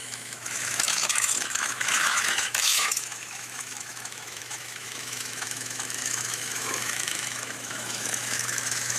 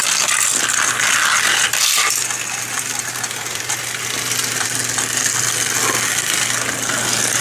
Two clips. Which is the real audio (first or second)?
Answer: second